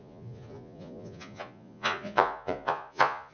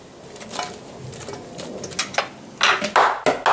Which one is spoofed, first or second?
first